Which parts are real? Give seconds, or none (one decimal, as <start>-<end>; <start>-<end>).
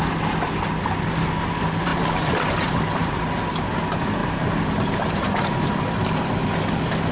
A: 0.0-1.9; 3.2-4.2; 6.2-7.1